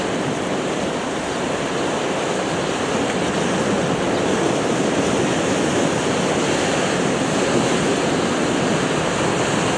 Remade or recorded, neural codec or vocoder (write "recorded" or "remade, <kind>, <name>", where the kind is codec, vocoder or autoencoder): recorded